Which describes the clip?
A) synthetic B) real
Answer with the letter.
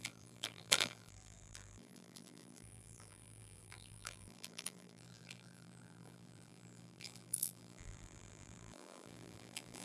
A